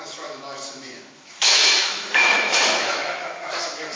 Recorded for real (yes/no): no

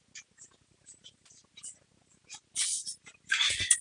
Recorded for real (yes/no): yes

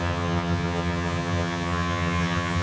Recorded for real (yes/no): no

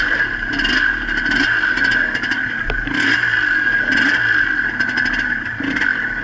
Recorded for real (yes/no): yes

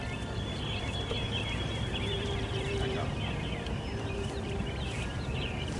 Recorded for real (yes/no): no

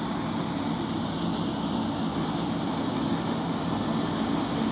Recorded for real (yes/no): yes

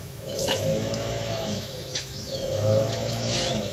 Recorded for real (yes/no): no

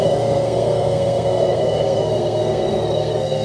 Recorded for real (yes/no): no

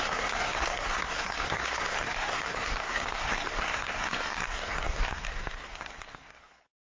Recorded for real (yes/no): no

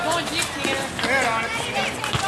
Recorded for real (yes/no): yes